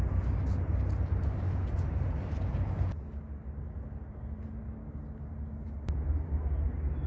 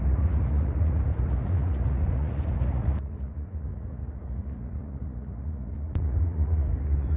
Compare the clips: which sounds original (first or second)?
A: first